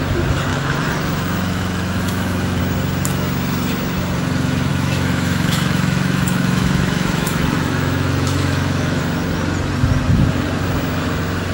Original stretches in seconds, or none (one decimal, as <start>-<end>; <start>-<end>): 0.0-0.5; 2.6-4.7; 9.0-11.5